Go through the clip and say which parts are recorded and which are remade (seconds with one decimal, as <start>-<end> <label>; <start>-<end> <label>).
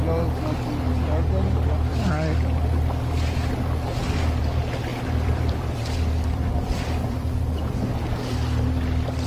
0.0-4.9 recorded; 4.9-7.4 remade; 7.4-9.3 recorded